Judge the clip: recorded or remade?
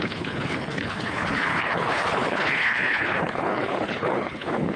remade